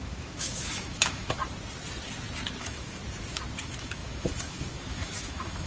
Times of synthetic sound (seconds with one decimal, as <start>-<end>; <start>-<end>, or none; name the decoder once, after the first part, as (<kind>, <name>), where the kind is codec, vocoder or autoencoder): 0.0-1.4 (autoencoder, DAC-VAE); 2.6-3.0; 3.6-5.7

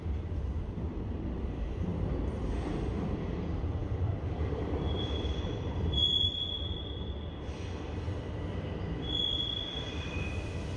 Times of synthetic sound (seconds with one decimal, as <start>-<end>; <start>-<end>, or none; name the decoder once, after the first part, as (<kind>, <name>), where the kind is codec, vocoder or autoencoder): 0.0-1.9 (vocoder, BigVGAN v2); 2.5-10.8

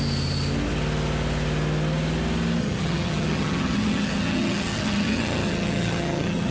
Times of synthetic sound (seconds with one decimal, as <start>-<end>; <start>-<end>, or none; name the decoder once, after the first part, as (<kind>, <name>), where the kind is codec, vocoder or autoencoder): 2.6-6.5 (vocoder, HiFi-GAN)

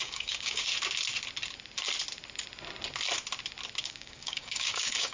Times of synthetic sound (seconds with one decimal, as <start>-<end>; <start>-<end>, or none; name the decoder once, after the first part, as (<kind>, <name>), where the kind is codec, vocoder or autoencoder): 0.0-0.7 (codec, DAC); 3.8-5.1

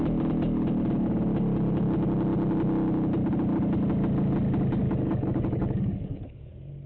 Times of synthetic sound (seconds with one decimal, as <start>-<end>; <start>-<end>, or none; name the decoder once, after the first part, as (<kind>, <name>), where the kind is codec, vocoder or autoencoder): 4.8-6.5 (codec, DAC)

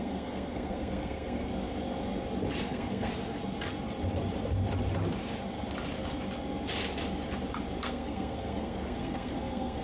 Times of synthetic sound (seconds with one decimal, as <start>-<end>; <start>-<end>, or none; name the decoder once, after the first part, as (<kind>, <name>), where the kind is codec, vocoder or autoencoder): 0.0-1.5 (codec, SNAC); 2.6-3.1; 7.8-9.8

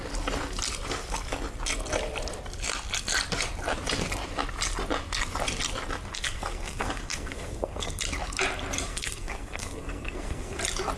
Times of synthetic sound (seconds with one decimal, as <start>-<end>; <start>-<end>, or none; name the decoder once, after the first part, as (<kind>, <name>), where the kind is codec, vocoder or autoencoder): 6.1-8.0 (codec, SNAC); 8.9-10.6